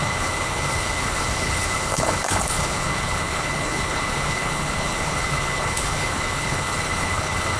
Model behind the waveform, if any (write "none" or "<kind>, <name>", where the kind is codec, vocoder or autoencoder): codec, HILCodec